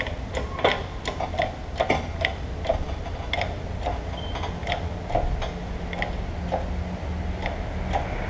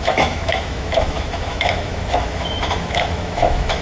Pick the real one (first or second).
first